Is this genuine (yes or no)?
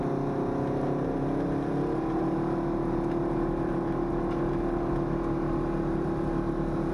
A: yes